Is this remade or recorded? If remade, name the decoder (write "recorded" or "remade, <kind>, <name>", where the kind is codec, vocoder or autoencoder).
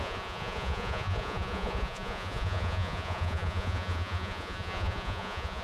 remade, vocoder, Vocos